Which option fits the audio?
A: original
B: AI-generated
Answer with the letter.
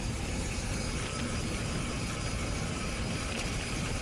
B